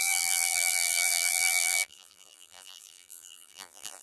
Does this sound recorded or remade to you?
remade